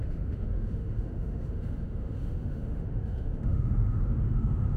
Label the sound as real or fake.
fake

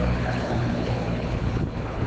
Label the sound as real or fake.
fake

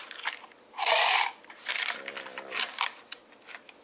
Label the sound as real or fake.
real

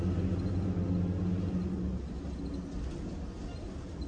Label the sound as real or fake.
real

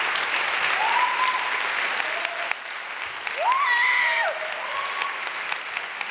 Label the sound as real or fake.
real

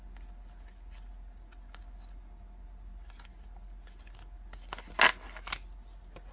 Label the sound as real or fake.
real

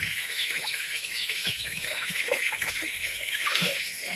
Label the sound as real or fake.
fake